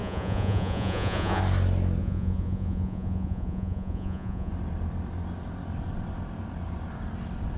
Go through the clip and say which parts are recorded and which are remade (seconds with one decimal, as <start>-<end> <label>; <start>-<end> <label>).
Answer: 0.0-1.4 remade; 1.4-2.0 recorded; 2.0-4.5 remade; 4.5-7.6 recorded